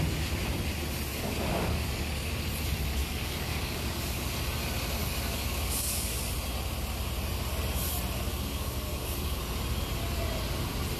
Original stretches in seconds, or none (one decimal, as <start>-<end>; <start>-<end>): 0.0-1.1; 2.3-3.0; 4.3-5.0; 6.2-8.3; 9.4-11.0